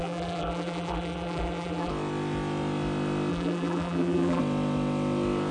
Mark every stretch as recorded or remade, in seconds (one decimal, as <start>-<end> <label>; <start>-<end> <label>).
0.0-1.9 remade; 1.9-3.3 recorded; 3.3-4.4 remade; 4.4-5.5 recorded